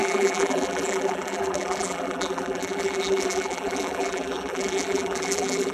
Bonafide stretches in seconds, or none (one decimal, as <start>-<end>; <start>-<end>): none